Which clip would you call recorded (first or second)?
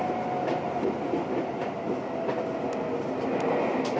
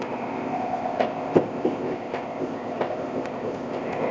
first